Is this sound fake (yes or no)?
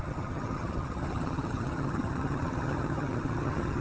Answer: yes